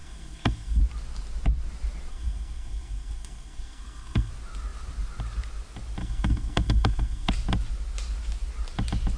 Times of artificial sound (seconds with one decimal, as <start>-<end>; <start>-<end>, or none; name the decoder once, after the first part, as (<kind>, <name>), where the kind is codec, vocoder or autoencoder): 0.0-0.8 (codec, SNAC); 2.1-4.3; 6.0-7.3